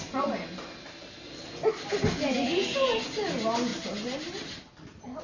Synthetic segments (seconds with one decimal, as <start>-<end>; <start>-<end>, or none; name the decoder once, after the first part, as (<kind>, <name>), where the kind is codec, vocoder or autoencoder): none